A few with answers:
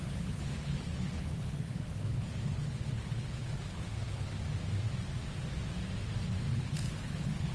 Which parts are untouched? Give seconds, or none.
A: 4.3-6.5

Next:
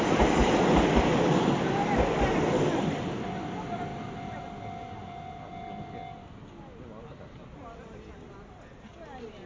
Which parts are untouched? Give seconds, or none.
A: 0.0-9.5

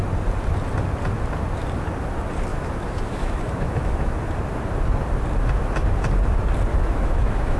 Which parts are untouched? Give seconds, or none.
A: 0.0-2.5; 4.1-6.7

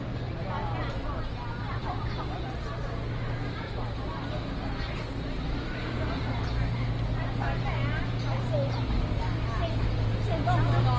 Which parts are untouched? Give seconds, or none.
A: 0.0-11.0

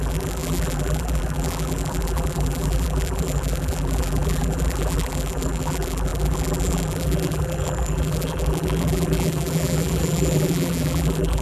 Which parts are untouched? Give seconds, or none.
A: none

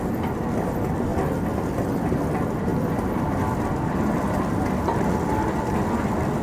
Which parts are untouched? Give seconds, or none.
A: 0.0-1.1; 1.8-2.7; 5.0-6.4